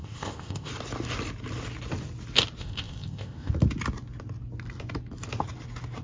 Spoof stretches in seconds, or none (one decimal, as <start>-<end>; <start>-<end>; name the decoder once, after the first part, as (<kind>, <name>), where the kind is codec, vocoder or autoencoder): 0.0-0.7 (codec, ZipCodec); 2.6-3.5